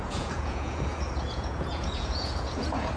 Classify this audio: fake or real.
fake